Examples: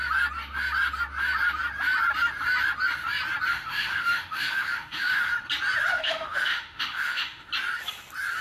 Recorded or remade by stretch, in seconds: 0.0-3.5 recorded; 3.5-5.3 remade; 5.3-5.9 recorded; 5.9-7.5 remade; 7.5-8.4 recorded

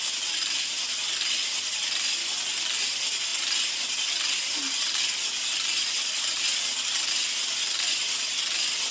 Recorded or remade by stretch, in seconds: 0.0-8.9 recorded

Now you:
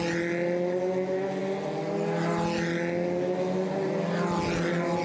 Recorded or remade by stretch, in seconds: 0.0-5.0 recorded

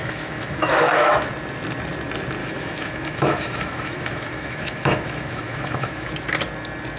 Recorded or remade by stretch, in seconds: 0.0-1.3 remade; 1.3-2.4 recorded; 2.4-6.1 remade; 6.1-7.0 recorded

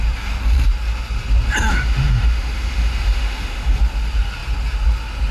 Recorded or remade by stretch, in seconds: 0.0-1.7 recorded; 1.7-3.8 remade; 3.8-5.3 recorded

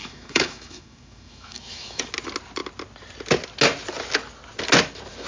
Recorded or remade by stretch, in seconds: 0.0-2.0 remade; 2.0-5.3 recorded

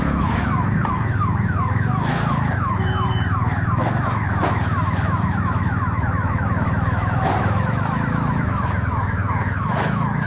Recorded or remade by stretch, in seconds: 0.0-10.3 remade

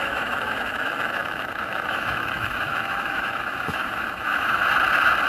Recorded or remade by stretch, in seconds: 0.0-4.6 remade; 4.6-5.3 recorded